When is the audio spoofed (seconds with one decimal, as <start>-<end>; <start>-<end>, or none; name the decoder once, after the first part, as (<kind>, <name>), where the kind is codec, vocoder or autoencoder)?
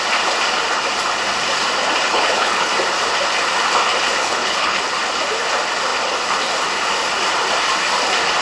2.1-2.7 (codec, HILCodec); 4.2-4.8